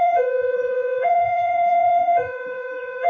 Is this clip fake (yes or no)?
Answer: yes